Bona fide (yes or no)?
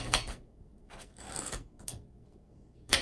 no